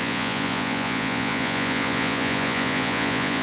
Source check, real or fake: fake